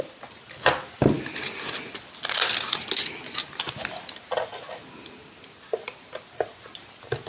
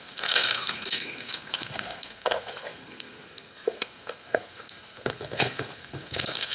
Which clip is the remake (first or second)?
second